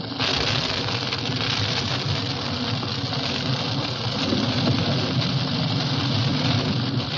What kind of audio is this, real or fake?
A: real